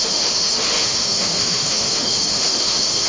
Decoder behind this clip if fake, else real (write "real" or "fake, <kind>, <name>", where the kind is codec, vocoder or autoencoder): fake, autoencoder, DAC-VAE